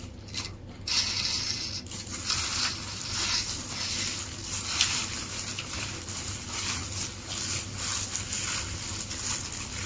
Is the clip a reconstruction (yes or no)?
no